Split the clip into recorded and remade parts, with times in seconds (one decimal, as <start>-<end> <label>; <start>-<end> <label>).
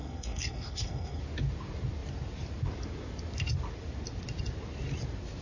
0.0-1.2 remade; 1.2-5.4 recorded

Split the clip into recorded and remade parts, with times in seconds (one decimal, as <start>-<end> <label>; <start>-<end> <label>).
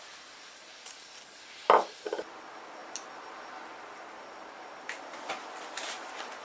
0.0-6.4 recorded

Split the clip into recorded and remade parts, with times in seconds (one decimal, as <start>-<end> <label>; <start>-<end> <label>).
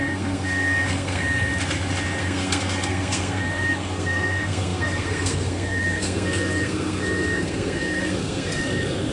0.0-1.5 remade; 1.5-2.2 recorded; 2.2-9.1 remade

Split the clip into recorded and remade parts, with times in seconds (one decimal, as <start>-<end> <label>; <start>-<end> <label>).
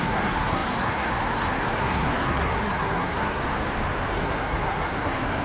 0.0-3.4 remade; 3.4-4.1 recorded; 4.1-5.4 remade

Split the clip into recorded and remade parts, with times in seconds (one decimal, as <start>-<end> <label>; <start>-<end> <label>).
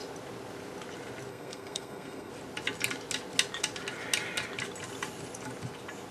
0.0-1.3 recorded; 1.3-2.3 remade; 2.3-6.1 recorded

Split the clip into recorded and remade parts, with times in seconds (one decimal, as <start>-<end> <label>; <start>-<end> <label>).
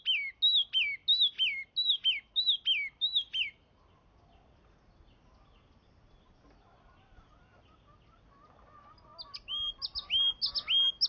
0.0-11.1 recorded